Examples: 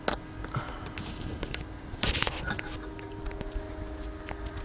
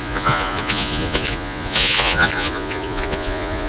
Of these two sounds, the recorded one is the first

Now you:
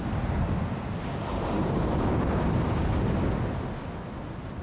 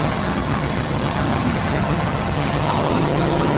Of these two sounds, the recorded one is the first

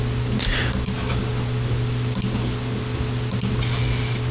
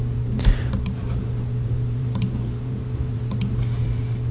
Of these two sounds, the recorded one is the first